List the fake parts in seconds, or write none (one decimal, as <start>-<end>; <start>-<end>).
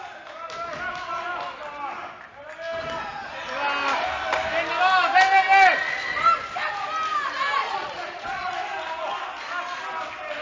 7.6-8.5